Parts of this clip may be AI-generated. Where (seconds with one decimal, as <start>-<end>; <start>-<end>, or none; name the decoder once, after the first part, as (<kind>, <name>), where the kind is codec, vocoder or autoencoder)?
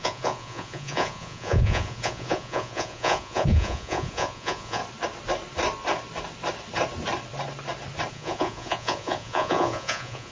0.0-4.8 (vocoder, Vocos); 8.1-10.3